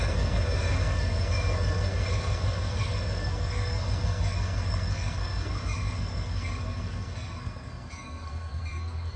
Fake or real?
fake